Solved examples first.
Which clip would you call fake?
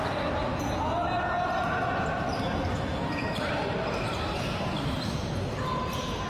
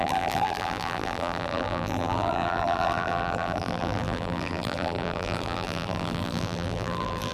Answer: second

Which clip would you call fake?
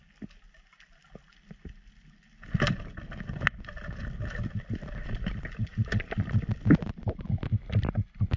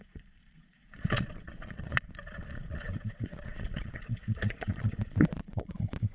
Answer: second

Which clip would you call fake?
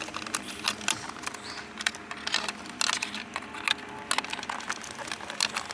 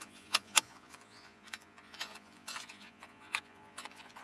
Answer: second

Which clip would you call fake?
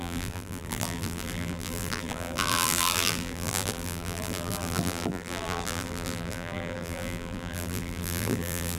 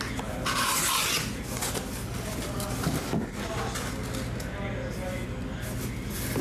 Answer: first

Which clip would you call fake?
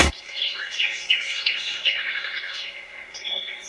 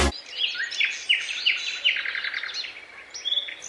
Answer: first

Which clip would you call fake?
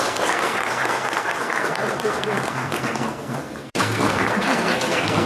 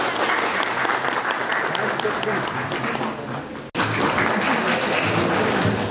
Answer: first